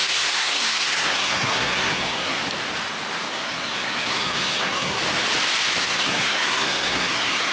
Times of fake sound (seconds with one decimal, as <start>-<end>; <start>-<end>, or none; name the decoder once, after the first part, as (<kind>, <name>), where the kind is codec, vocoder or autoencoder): 0.0-2.4 (codec, SNAC); 3.3-5.0; 5.8-7.5